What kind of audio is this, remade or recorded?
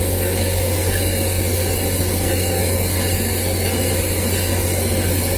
remade